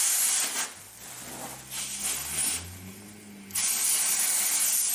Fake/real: real